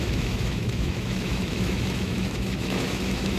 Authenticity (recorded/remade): remade